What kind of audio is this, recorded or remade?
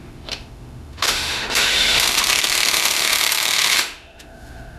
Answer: remade